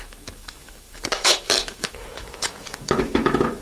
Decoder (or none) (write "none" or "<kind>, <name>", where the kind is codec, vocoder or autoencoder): autoencoder, DAC-VAE